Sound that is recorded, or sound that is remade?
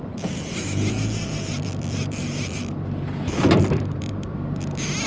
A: remade